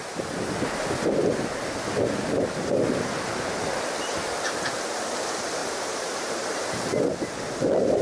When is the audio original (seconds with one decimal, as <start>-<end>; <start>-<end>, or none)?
0.0-5.6; 6.7-8.0